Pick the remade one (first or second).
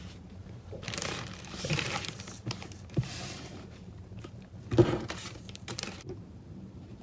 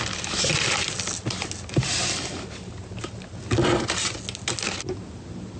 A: first